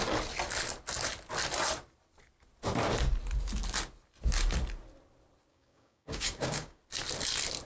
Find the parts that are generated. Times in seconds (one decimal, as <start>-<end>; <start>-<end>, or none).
5.5-6.8